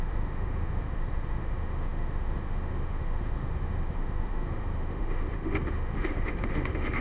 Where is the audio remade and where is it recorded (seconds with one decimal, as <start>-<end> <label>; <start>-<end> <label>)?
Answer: 0.0-7.0 remade